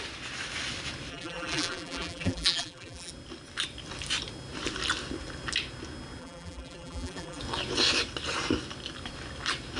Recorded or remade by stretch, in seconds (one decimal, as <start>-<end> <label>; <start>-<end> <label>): 0.0-1.1 recorded; 1.1-3.1 remade; 3.1-6.2 recorded; 6.2-7.4 remade; 7.4-9.8 recorded